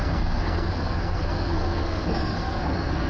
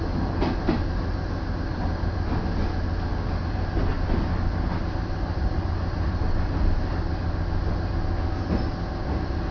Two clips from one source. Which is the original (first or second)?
second